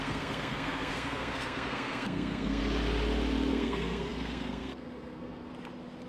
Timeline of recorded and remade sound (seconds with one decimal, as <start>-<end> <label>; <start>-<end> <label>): 0.0-2.6 remade; 2.6-3.5 recorded; 3.5-5.5 remade; 5.5-6.1 recorded